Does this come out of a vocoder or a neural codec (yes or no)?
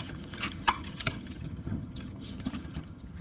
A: yes